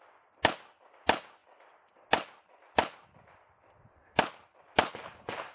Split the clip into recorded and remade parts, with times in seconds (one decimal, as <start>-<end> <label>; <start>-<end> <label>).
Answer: 0.0-5.5 recorded